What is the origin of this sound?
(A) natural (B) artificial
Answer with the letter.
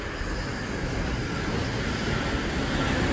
A